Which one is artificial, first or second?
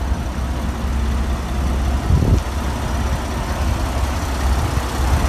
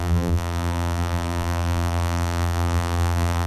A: second